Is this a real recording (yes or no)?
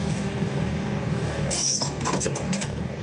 no